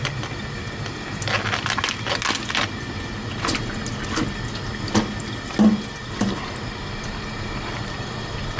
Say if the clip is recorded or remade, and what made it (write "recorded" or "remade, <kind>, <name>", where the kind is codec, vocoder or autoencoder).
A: recorded